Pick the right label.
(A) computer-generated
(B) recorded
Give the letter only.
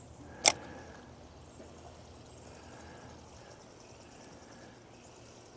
B